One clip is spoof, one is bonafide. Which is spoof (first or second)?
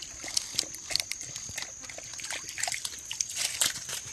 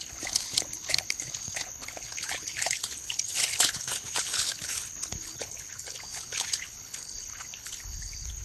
second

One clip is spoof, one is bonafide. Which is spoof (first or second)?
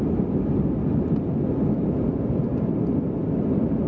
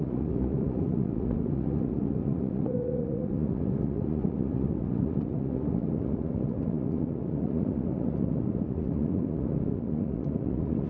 second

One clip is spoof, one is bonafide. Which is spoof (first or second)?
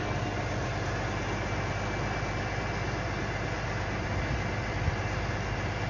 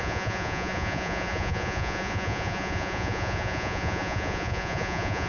second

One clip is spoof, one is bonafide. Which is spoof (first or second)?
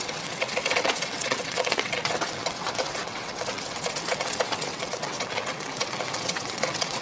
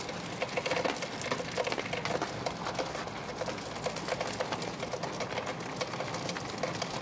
first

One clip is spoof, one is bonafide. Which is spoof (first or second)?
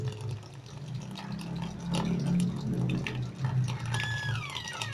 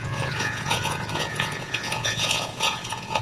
second